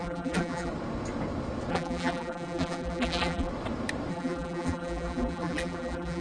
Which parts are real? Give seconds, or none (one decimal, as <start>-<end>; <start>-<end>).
0.7-1.7; 3.5-4.1